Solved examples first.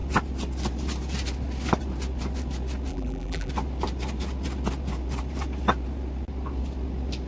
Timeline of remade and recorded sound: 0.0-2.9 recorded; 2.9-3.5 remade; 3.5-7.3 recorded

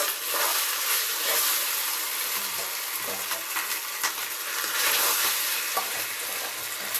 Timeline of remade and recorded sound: 0.0-0.5 recorded; 0.5-1.7 remade; 1.7-4.2 recorded; 4.2-6.1 remade; 6.1-7.0 recorded

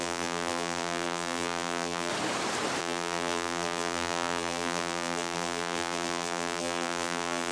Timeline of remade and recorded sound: 0.0-2.1 remade; 2.1-2.8 recorded; 2.8-7.5 remade

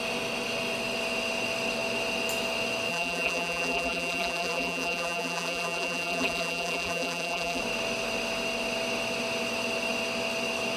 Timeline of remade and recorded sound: 0.0-2.9 recorded; 2.9-7.6 remade; 7.6-10.8 recorded